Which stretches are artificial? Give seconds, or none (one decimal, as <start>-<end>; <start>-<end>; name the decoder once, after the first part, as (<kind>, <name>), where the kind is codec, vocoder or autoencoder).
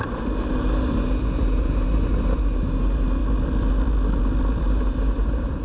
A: 0.0-3.2 (vocoder, BigVGAN v2); 4.6-5.6